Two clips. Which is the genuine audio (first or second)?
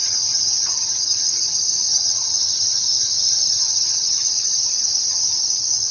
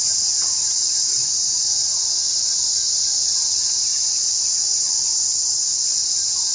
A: second